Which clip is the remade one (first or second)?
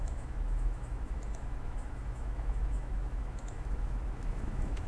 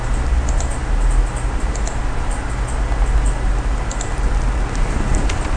first